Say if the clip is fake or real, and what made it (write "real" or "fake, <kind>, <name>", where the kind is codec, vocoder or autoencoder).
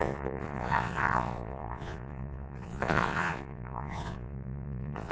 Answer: fake, vocoder, Vocos